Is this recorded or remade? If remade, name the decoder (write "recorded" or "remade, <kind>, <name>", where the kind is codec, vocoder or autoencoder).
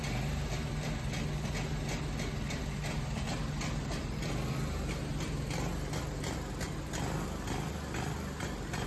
recorded